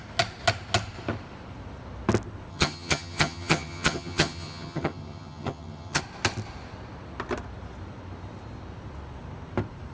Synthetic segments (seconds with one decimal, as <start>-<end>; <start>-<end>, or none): 2.5-6.0